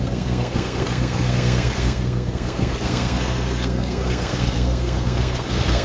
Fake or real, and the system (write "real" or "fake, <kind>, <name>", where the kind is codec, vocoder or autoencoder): fake, codec, SNAC